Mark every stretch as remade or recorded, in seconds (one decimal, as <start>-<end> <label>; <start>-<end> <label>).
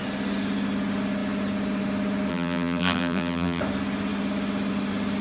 0.0-2.3 recorded; 2.3-3.6 remade; 3.6-5.2 recorded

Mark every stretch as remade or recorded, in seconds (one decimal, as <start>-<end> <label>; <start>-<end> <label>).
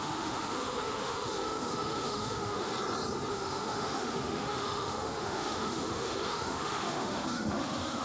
0.0-2.7 remade; 2.7-3.3 recorded; 3.3-8.0 remade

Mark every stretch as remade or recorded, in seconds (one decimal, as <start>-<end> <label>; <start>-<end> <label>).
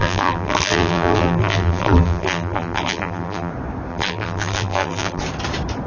0.0-3.5 remade; 3.5-3.9 recorded; 3.9-5.2 remade; 5.2-5.9 recorded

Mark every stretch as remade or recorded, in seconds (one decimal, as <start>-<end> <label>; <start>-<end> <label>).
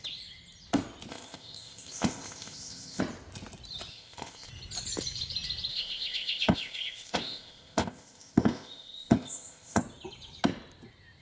0.0-1.1 recorded; 1.1-3.0 remade; 3.0-3.9 recorded; 3.9-4.5 remade; 4.5-5.7 recorded; 5.7-9.8 remade; 9.8-11.2 recorded